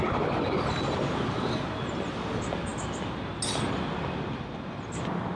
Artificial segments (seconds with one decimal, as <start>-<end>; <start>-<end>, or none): none